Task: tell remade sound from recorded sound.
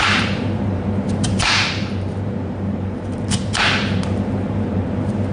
remade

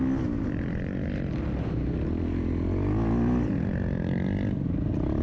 recorded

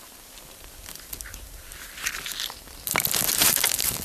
remade